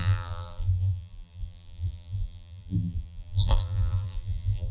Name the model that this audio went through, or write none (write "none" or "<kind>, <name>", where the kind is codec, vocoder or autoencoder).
vocoder, BigVGAN v2